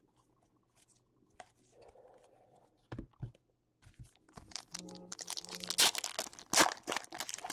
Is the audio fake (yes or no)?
no